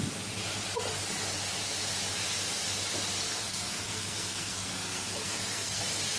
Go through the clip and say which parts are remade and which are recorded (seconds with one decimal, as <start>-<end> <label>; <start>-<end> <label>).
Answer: 0.0-3.4 recorded; 3.4-5.8 remade; 5.8-6.2 recorded